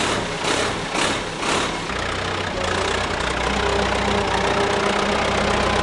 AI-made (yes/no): no